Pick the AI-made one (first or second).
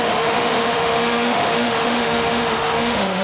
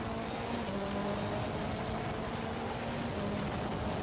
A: first